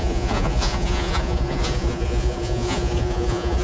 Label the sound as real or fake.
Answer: fake